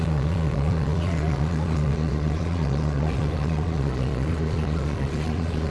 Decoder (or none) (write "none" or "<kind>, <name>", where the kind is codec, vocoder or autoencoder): vocoder, Vocos